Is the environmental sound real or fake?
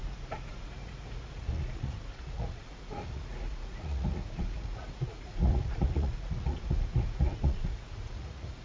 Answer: fake